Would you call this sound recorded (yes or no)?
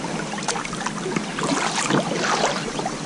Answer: yes